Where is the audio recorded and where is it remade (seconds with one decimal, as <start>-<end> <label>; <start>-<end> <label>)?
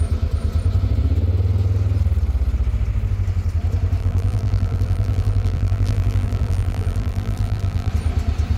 0.0-4.0 recorded; 4.0-7.9 remade; 7.9-8.6 recorded